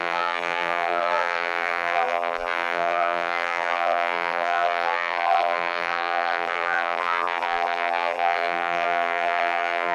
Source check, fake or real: fake